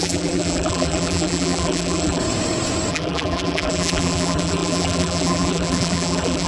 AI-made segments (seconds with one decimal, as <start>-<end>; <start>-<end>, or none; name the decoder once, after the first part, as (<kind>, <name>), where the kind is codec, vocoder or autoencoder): 0.0-2.2 (vocoder, BigVGAN v2); 2.9-6.5